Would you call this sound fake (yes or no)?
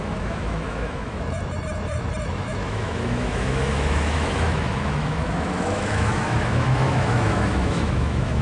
yes